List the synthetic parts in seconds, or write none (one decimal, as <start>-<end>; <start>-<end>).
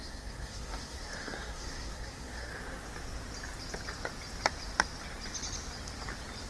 0.0-2.5